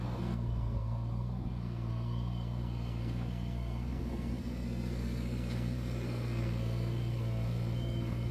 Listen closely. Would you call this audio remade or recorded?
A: remade